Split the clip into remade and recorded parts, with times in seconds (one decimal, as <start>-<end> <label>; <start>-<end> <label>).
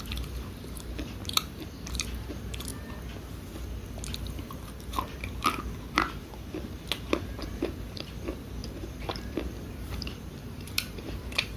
0.0-2.7 remade; 2.7-7.2 recorded; 7.2-11.6 remade